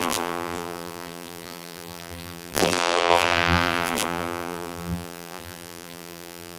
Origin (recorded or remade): remade